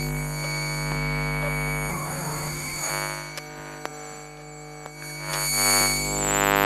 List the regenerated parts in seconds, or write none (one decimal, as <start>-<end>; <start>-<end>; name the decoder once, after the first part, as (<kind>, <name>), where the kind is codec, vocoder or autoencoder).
1.9-2.9 (codec, DAC)